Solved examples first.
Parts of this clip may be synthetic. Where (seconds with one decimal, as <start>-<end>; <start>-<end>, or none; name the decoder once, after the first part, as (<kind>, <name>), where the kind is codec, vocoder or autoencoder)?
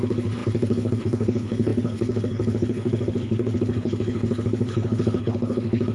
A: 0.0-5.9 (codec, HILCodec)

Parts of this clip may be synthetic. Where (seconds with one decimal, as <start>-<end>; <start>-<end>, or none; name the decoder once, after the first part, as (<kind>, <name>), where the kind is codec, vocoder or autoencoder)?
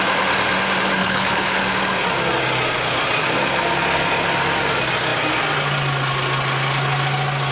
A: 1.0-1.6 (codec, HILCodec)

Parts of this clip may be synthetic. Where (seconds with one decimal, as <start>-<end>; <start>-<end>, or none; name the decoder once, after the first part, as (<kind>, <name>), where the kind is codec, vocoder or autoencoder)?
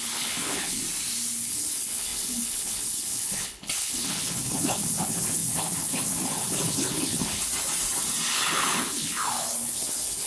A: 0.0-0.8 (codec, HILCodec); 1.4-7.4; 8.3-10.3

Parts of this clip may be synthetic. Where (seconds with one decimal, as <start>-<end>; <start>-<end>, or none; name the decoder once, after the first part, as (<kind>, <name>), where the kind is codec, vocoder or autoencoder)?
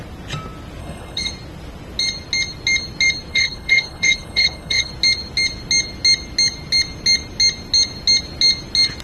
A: 0.8-1.3 (codec, HILCodec); 3.3-4.9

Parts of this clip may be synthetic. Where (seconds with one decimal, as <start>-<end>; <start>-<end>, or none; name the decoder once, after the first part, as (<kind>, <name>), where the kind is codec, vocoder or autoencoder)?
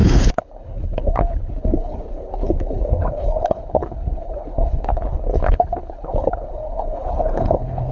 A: 0.0-7.9 (codec, HILCodec)